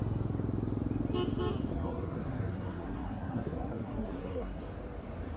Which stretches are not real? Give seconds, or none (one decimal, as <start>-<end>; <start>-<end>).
1.7-4.6